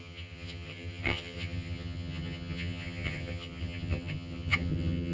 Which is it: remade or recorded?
remade